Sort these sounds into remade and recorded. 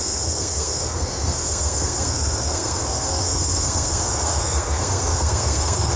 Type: remade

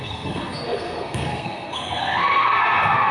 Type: remade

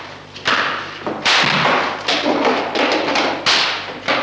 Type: recorded